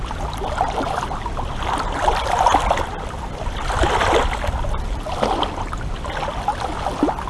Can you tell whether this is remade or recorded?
recorded